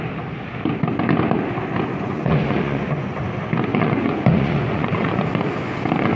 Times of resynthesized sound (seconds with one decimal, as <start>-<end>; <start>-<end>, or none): 1.9-3.2; 3.7-5.2